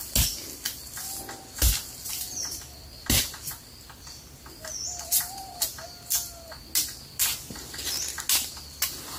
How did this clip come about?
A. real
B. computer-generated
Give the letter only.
A